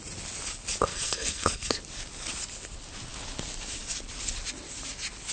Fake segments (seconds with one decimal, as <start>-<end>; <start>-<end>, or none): 0.9-1.8